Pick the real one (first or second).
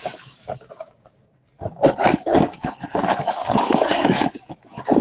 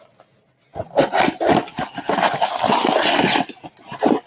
second